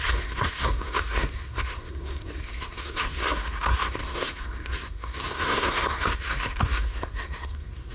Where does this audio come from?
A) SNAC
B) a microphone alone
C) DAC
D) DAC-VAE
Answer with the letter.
A